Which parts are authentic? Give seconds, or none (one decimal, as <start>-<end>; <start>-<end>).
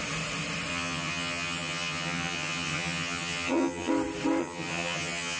0.0-0.7; 3.9-4.4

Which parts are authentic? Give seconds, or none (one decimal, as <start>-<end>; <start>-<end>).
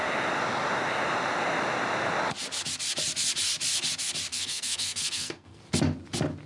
0.0-4.3; 5.6-6.5